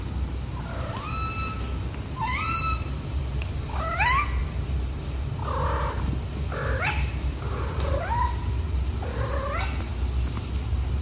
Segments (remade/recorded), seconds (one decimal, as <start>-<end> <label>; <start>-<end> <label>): 0.0-2.2 recorded; 2.2-3.2 remade; 3.2-4.4 recorded; 4.4-8.1 remade; 8.1-11.0 recorded